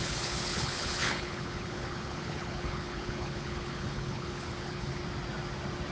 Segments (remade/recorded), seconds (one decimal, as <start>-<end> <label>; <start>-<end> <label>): 0.0-5.0 remade; 5.0-5.9 recorded